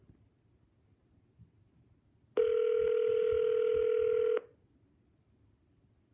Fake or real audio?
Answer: real